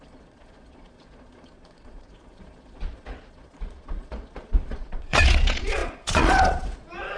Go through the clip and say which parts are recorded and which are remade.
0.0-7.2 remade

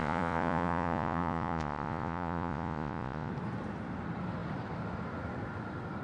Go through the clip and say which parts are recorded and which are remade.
0.0-3.3 remade; 3.3-6.0 recorded

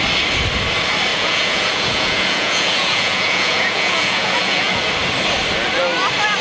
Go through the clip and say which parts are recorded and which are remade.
0.0-1.1 recorded; 1.1-4.9 remade; 4.9-6.4 recorded

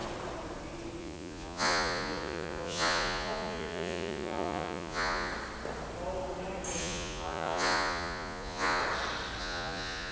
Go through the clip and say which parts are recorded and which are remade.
0.0-1.0 recorded; 1.0-5.3 remade; 5.3-6.8 recorded; 6.8-8.8 remade; 8.8-9.4 recorded; 9.4-10.1 remade

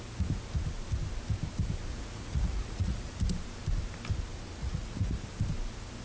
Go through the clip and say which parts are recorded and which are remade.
0.0-1.9 recorded; 1.9-3.1 remade; 3.1-4.6 recorded; 4.6-5.2 remade; 5.2-6.0 recorded

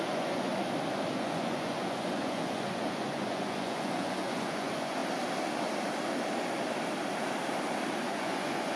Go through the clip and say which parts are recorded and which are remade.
0.0-0.5 remade; 0.5-1.1 recorded; 1.1-5.0 remade; 5.0-8.0 recorded; 8.0-8.8 remade

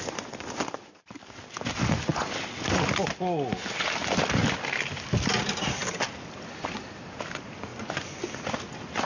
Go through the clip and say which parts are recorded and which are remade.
0.0-7.7 recorded; 7.7-8.2 remade; 8.2-9.1 recorded

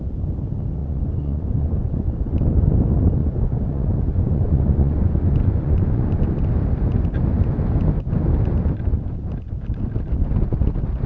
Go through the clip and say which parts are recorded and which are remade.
0.0-0.8 recorded; 0.8-2.1 remade; 2.1-3.2 recorded; 3.2-6.4 remade; 6.4-11.1 recorded